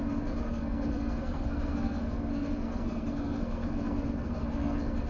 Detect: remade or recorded remade